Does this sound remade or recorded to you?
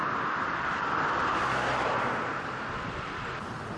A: remade